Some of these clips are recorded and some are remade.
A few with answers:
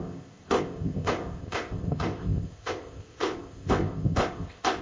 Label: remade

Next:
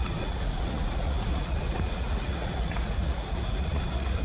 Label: remade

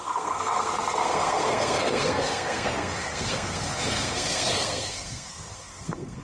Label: remade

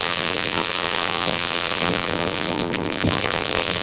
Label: remade